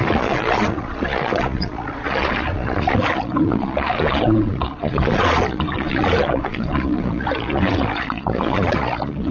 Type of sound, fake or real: fake